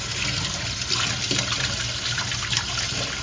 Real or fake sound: real